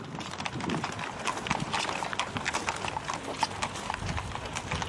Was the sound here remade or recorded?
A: recorded